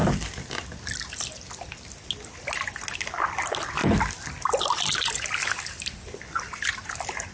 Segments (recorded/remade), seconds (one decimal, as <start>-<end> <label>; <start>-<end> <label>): 0.0-2.1 remade; 2.1-3.8 recorded; 3.8-7.3 remade